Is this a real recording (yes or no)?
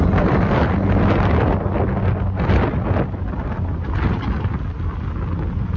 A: yes